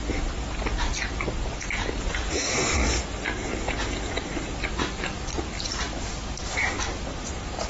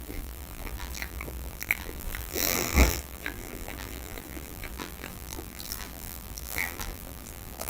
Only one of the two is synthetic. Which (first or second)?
second